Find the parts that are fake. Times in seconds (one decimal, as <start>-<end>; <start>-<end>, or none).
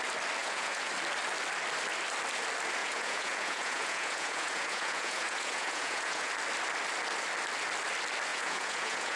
0.4-0.9; 2.8-6.3; 8.3-9.2